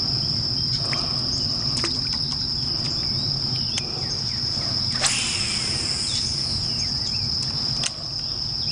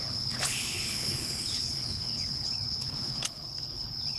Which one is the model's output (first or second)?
second